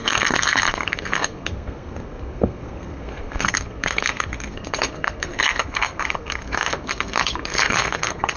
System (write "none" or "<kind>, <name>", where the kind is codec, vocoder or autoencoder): codec, SNAC